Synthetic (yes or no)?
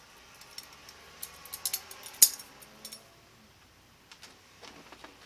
no